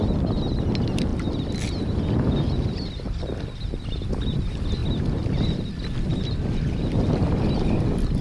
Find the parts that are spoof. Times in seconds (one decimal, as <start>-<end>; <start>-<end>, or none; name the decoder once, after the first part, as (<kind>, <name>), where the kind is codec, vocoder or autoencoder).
none